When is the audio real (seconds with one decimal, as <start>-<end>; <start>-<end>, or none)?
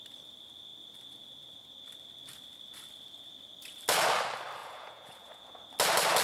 0.0-4.6; 5.6-6.2